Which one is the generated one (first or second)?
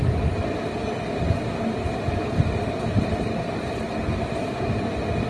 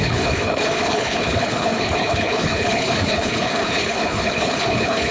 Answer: second